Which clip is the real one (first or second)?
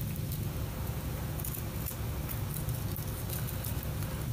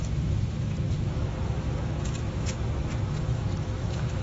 first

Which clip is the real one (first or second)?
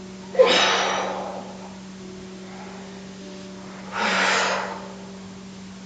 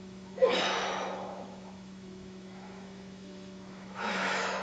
first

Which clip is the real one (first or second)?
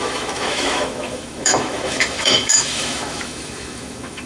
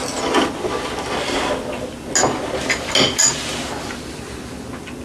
second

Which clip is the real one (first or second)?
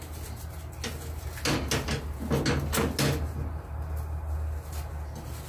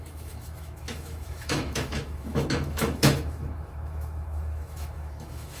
first